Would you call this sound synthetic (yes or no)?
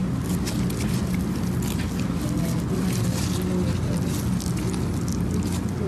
no